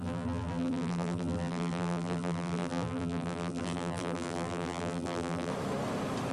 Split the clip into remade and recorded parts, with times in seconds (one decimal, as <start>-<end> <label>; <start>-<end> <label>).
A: 0.0-5.5 remade; 5.5-6.3 recorded